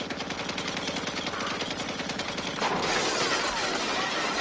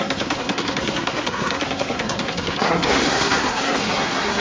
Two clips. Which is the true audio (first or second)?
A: first